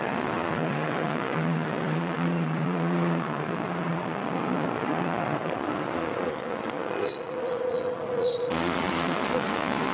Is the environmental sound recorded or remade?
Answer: remade